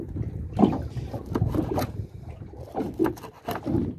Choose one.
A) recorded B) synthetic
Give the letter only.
A